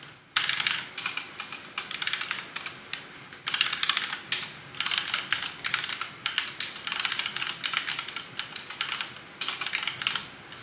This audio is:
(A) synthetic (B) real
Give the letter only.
B